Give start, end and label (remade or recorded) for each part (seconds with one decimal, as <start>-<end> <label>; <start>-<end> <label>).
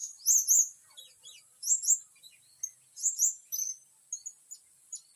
0.0-5.2 recorded